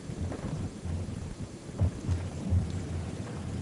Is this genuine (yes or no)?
no